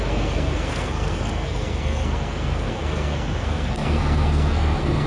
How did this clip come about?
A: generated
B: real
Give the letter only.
A